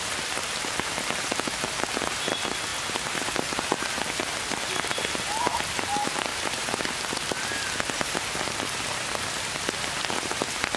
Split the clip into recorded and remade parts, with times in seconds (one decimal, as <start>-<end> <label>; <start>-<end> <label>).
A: 0.0-2.7 recorded; 2.7-4.1 remade; 4.1-6.3 recorded; 6.3-6.8 remade; 6.8-10.8 recorded